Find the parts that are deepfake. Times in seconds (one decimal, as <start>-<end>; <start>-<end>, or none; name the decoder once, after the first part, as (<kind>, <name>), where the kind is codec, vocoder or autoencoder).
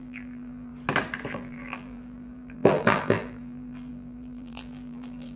0.0-0.7 (vocoder, BigVGAN v2); 1.3-5.4